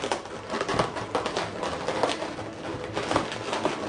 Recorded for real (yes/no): yes